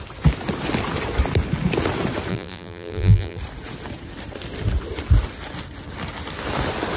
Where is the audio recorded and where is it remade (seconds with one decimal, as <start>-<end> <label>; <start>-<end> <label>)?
0.0-2.3 recorded; 2.3-3.4 remade; 3.4-7.0 recorded